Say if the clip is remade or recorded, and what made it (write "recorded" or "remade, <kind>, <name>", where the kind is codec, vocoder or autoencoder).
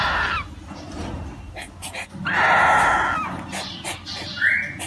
recorded